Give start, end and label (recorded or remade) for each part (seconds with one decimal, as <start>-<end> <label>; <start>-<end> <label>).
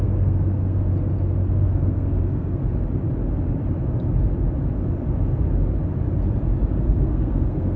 0.0-0.9 remade; 0.9-1.6 recorded; 1.6-2.6 remade; 2.6-6.8 recorded; 6.8-7.8 remade